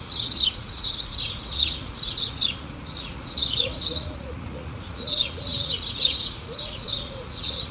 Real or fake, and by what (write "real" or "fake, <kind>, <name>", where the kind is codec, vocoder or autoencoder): fake, vocoder, Vocos